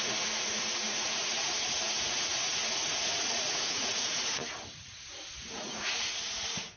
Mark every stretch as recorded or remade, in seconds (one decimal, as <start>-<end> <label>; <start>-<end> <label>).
0.0-4.4 remade; 4.4-5.5 recorded; 5.5-6.8 remade